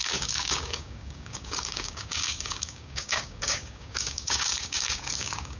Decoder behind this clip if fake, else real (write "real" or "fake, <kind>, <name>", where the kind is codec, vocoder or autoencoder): fake, codec, DAC